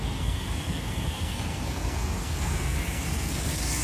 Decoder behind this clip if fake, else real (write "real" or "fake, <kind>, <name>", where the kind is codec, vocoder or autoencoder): fake, codec, SNAC